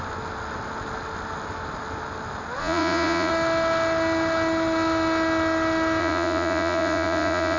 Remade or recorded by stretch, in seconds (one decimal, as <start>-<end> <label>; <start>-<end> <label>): 0.0-2.6 recorded; 2.6-3.3 remade; 3.3-6.0 recorded; 6.0-7.6 remade